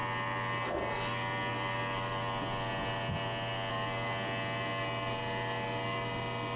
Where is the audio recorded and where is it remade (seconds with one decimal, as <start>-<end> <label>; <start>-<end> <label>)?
0.0-6.6 recorded